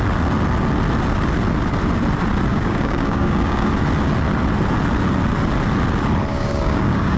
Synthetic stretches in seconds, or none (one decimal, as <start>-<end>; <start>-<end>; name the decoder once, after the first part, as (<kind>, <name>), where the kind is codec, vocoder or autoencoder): 2.5-3.7 (codec, DAC); 6.3-7.2